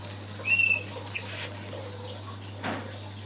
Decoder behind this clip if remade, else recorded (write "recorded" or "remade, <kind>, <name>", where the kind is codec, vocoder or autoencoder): recorded